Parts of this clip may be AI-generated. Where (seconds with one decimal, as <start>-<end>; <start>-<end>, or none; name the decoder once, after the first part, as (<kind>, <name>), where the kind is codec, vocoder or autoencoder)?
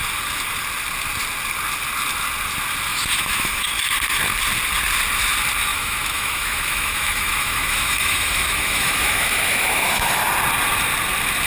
2.9-3.7 (autoencoder, DAC-VAE); 5.7-10.3